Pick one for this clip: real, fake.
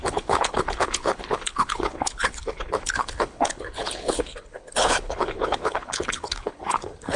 fake